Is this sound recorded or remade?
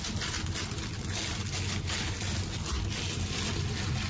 recorded